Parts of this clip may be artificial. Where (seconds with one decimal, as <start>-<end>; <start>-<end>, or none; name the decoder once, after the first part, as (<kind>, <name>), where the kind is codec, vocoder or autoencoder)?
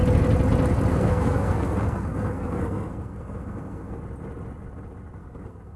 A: 0.9-4.0 (codec, SNAC); 5.2-5.8